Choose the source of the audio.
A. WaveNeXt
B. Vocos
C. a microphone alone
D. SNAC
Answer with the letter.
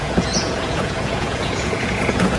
B